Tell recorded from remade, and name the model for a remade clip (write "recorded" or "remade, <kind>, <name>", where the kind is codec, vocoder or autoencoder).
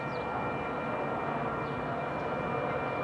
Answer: recorded